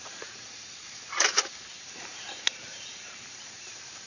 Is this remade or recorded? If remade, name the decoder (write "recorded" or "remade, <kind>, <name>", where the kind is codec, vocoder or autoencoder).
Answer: remade, vocoder, BigVGAN v2